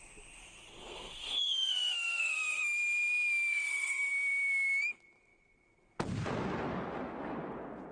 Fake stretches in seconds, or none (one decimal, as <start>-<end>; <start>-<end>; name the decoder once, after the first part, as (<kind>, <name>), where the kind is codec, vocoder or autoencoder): 0.8-2.6 (codec, SNAC); 3.5-4.1